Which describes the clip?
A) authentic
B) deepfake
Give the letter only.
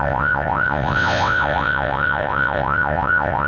B